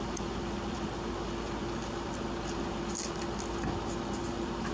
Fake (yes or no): no